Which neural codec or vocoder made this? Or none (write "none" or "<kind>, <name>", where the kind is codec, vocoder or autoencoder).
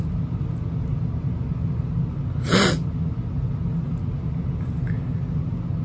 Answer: none